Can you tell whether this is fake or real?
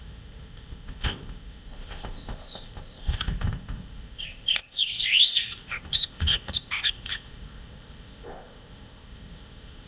fake